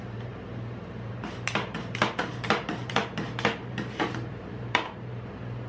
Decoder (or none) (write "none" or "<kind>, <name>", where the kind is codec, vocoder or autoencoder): vocoder, BigVGAN v2